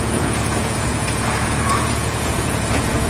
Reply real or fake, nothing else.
fake